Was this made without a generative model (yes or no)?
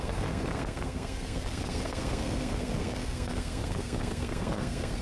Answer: no